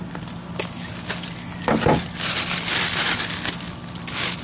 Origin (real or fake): real